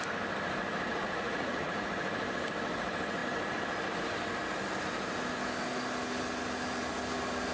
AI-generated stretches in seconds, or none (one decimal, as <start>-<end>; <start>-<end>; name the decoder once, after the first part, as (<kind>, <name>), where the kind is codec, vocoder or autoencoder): 0.9-1.9 (vocoder, Vocos)